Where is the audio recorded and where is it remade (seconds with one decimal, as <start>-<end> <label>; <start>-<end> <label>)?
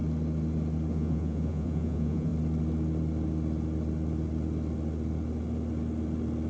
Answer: 0.0-0.9 recorded; 0.9-2.3 remade; 2.3-6.5 recorded